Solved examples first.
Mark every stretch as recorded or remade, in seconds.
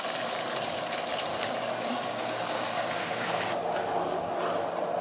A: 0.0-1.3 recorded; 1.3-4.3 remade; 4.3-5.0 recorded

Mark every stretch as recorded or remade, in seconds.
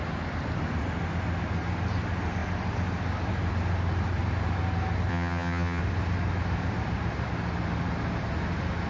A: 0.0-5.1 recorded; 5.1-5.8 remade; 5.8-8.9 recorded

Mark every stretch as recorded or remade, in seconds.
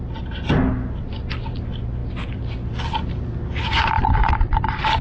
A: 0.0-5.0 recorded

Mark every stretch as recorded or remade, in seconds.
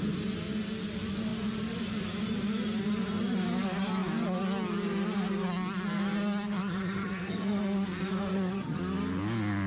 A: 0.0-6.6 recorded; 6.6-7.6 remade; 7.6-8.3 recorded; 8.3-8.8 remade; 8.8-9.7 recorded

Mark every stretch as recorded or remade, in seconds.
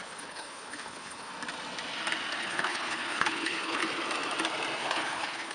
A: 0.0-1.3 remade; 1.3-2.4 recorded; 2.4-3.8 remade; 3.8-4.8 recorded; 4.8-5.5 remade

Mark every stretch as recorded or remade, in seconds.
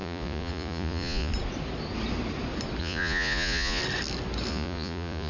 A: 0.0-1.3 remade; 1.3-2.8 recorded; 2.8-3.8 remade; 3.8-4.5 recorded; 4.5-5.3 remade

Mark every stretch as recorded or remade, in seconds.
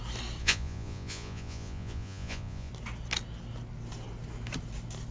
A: 0.0-0.4 recorded; 0.4-2.7 remade; 2.7-5.1 recorded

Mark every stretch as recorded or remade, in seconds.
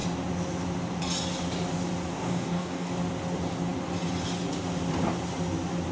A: 0.0-2.1 recorded; 2.1-2.9 remade; 2.9-5.9 recorded